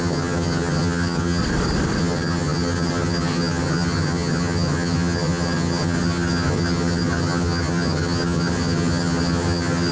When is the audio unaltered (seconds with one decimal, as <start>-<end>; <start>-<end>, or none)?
1.4-2.0